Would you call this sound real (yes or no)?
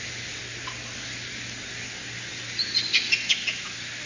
yes